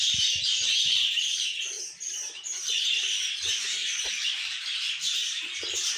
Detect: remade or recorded remade